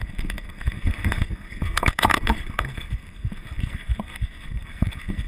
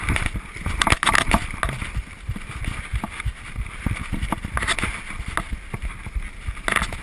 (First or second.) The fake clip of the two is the first